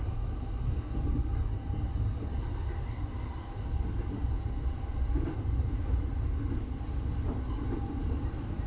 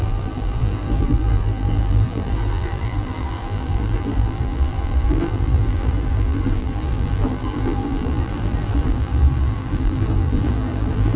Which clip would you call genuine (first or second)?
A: first